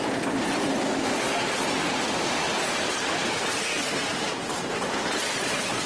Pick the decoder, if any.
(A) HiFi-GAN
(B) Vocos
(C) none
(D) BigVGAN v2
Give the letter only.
C